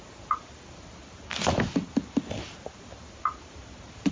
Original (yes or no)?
yes